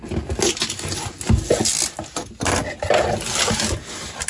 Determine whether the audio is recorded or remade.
recorded